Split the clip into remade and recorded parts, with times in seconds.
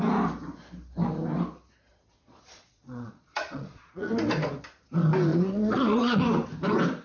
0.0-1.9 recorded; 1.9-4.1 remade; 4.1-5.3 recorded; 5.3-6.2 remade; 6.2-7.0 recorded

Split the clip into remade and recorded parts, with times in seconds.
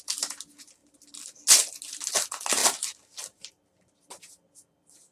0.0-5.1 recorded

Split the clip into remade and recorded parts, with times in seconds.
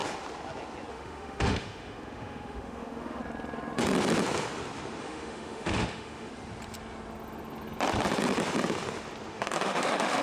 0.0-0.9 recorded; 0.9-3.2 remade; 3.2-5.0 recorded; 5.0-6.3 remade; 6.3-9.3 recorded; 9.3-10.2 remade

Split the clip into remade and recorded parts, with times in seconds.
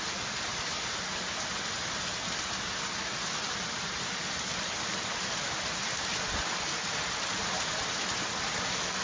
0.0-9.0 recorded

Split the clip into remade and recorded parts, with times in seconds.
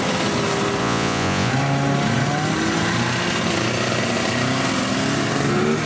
0.0-0.8 recorded; 0.8-1.5 remade; 1.5-5.9 recorded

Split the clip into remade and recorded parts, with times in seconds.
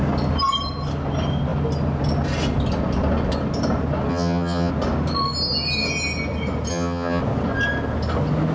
0.0-4.1 recorded; 4.1-4.7 remade; 4.7-6.7 recorded; 6.7-7.2 remade; 7.2-8.5 recorded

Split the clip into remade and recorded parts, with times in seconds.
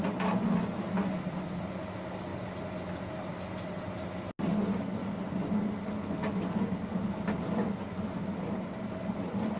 0.0-9.6 recorded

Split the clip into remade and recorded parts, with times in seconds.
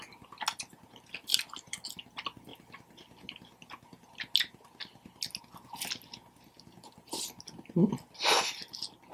0.0-1.3 recorded; 1.3-1.9 remade; 1.9-9.1 recorded